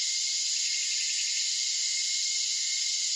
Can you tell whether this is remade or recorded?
recorded